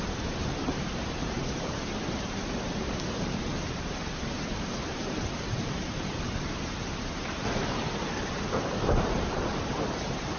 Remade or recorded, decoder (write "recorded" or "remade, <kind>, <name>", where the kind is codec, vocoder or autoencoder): remade, vocoder, BigVGAN v2